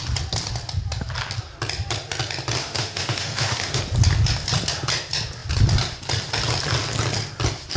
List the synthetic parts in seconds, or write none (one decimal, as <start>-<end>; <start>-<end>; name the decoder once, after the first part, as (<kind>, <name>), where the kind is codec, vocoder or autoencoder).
2.6-3.8 (autoencoder, DAC-VAE)